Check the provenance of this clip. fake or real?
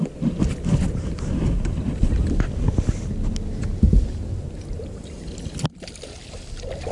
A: real